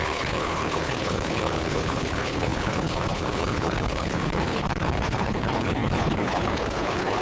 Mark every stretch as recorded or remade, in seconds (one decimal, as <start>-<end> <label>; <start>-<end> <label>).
0.0-7.2 remade